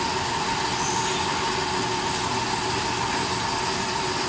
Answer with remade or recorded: recorded